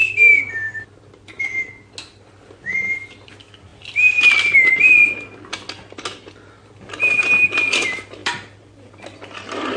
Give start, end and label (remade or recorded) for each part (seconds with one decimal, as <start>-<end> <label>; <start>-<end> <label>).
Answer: 0.0-6.6 recorded; 6.6-7.2 remade; 7.2-8.2 recorded; 8.2-8.9 remade; 8.9-9.8 recorded